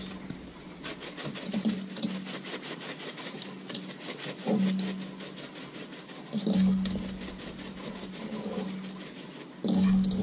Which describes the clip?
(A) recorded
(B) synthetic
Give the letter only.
A